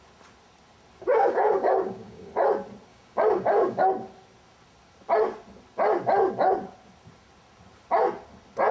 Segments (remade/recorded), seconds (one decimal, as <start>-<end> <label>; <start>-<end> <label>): 0.0-1.1 recorded; 1.1-2.3 remade; 2.3-2.9 recorded; 2.9-3.8 remade; 3.8-8.7 recorded